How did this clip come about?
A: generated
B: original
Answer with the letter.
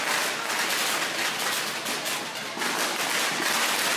B